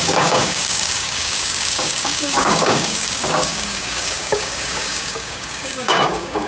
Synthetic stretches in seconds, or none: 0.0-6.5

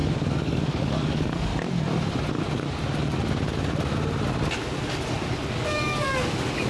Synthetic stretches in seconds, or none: 0.0-1.5; 5.5-6.7

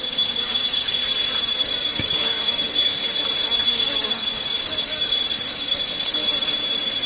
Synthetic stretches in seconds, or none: 0.0-1.0; 1.6-3.2; 3.9-6.2

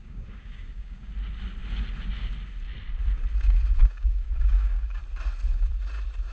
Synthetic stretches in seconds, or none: 0.0-1.1; 3.8-5.0

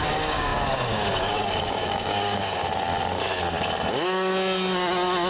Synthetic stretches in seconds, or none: 0.0-2.6; 3.9-4.3